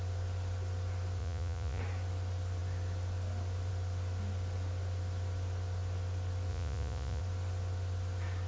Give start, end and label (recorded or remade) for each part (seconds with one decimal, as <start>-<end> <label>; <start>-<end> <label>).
0.0-1.2 recorded; 1.2-1.8 remade; 1.8-6.5 recorded; 6.5-7.2 remade; 7.2-8.5 recorded